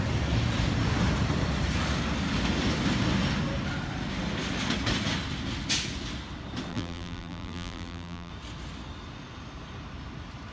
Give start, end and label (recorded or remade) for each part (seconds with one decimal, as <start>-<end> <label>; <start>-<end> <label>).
0.0-6.7 recorded; 6.7-8.3 remade; 8.3-10.5 recorded